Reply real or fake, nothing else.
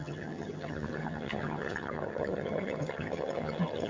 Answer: fake